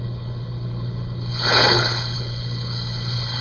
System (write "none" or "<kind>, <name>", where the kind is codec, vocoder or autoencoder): codec, HILCodec